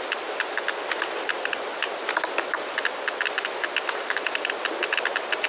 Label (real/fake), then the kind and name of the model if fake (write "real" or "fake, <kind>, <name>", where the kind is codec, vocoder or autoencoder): real